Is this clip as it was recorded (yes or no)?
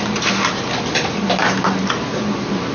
yes